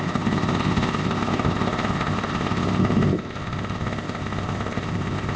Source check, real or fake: fake